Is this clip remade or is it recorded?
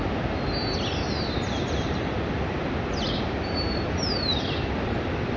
recorded